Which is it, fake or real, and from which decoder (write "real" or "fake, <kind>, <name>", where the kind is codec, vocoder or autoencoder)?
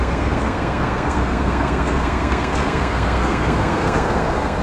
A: fake, codec, SNAC